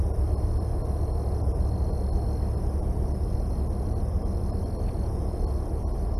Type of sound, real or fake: real